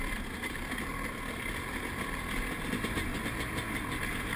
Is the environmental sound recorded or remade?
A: recorded